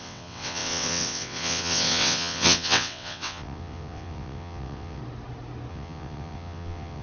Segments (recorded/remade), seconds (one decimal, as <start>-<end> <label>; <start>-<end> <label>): 0.0-5.0 remade; 5.0-5.7 recorded; 5.7-7.0 remade